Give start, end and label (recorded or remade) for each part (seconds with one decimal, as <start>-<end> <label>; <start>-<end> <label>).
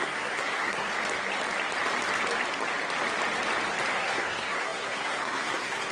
0.0-0.9 remade; 0.9-3.9 recorded; 3.9-5.9 remade